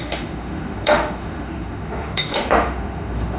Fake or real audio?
fake